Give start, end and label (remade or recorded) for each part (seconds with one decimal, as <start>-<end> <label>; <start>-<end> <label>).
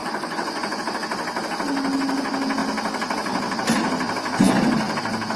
0.0-0.8 remade; 0.8-5.4 recorded